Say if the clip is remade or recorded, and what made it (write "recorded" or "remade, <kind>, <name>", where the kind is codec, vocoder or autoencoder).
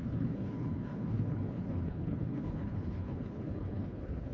remade, codec, HILCodec